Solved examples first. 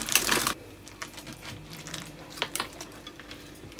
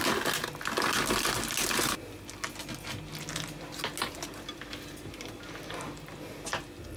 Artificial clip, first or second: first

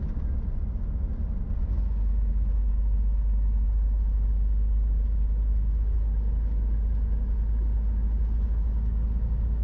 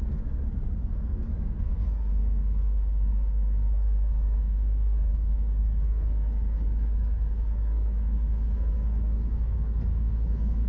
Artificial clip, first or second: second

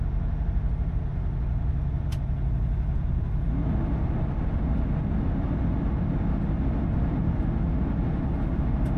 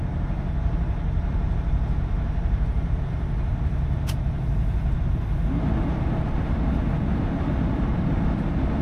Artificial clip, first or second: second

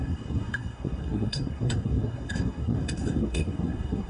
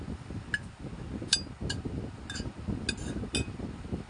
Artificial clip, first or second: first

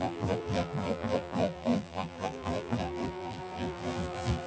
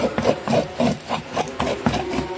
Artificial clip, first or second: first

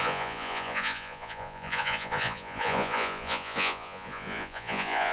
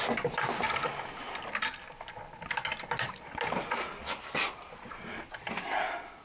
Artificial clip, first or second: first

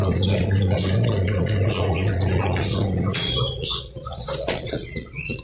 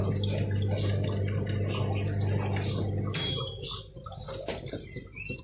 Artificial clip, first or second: first